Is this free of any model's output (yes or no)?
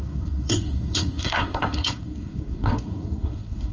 no